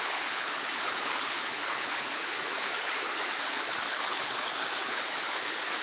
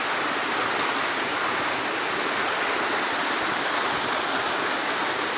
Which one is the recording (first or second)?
second